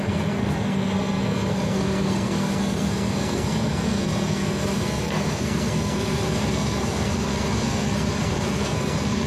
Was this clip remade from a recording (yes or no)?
yes